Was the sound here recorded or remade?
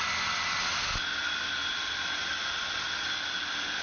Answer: recorded